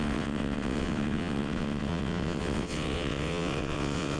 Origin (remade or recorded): remade